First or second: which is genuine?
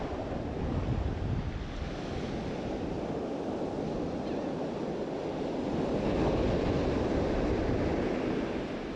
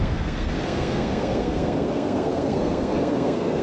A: first